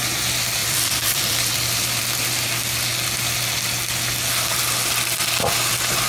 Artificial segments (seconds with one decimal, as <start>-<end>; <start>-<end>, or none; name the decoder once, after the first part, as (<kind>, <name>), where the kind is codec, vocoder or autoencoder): 0.6-2.0 (vocoder, BigVGAN v2)